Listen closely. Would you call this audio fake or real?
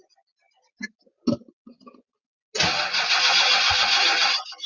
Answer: real